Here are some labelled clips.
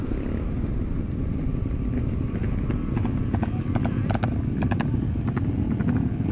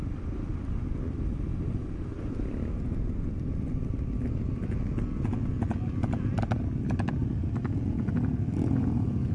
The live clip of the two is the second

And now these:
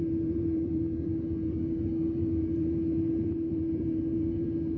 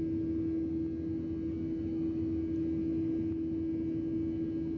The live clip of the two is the second